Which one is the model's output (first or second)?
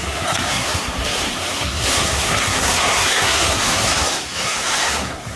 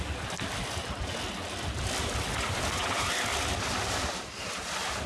first